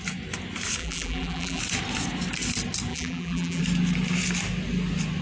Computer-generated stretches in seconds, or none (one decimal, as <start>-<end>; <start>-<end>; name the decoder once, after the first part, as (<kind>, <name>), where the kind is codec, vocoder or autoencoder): 0.8-1.6 (vocoder, BigVGAN v2); 2.9-3.6